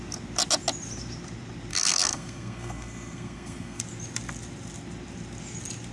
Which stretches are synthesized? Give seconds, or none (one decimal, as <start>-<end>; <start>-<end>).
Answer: 1.7-3.8